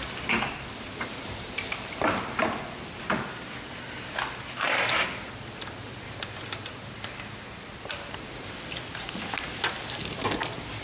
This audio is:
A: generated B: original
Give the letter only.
B